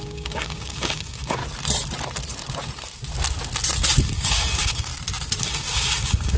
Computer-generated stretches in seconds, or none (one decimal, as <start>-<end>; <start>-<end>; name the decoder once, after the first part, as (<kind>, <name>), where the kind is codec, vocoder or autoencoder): 0.0-1.4 (codec, DAC); 4.0-4.9; 5.4-6.4